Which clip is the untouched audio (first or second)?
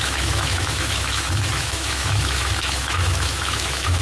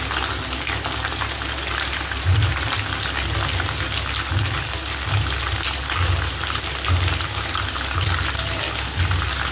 second